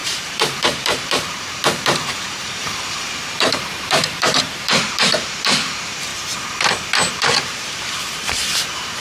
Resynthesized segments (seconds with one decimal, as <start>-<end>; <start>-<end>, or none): 0.0-6.1; 7.1-9.0